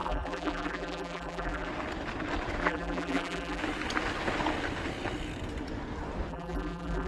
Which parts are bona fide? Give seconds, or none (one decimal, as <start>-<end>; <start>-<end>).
1.7-2.6; 3.6-6.3